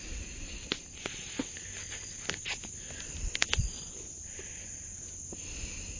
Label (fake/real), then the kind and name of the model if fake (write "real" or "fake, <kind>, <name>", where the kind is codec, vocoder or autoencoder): real